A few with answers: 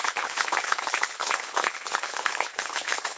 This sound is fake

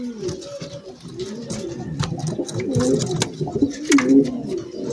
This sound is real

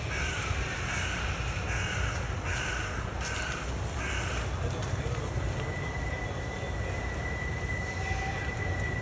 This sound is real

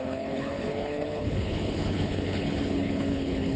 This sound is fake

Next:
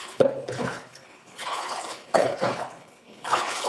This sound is fake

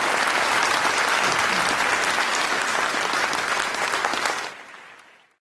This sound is real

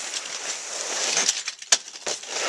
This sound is real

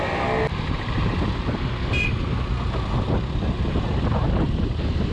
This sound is real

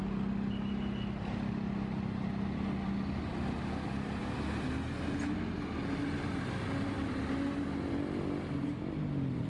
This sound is real